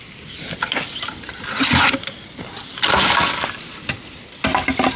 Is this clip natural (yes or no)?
yes